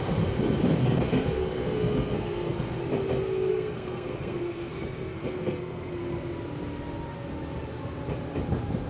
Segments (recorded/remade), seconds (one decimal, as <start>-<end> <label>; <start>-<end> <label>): 0.0-0.8 recorded; 0.8-2.8 remade; 2.8-3.5 recorded; 3.5-6.0 remade; 6.0-8.9 recorded